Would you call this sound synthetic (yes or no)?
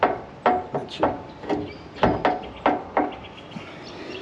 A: no